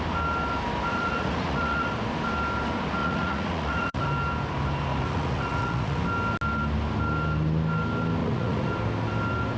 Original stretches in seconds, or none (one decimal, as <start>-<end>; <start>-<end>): 0.0-0.9; 1.9-3.0; 4.1-4.9; 6.0-8.2; 8.7-9.6